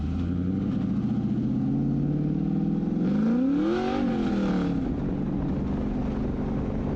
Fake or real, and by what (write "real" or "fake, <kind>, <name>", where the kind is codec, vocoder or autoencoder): real